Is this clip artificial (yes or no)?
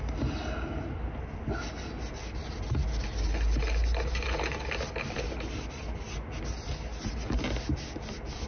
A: no